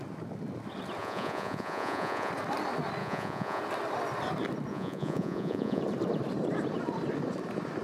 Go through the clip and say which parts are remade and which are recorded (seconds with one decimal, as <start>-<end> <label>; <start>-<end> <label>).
0.0-1.0 recorded; 1.0-2.3 remade; 2.3-3.0 recorded; 3.0-3.6 remade; 3.6-4.7 recorded; 4.7-5.8 remade; 5.8-7.8 recorded